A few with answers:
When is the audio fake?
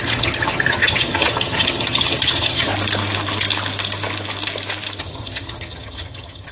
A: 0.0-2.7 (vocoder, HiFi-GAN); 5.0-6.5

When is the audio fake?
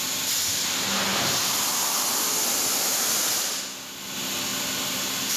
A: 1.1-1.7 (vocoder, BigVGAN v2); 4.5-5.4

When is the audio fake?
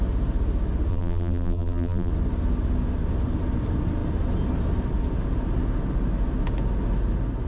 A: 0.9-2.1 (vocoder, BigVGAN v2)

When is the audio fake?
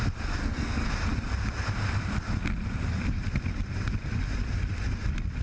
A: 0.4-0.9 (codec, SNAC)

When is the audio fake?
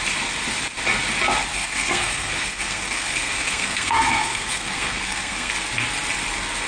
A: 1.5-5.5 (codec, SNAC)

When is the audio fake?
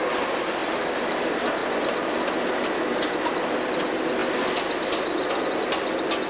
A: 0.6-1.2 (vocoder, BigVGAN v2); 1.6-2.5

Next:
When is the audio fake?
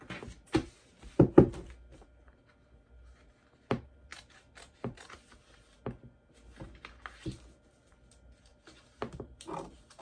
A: none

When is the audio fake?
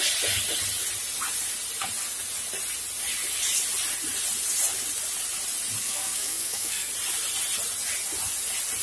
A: 5.8-6.9 (codec, SNAC)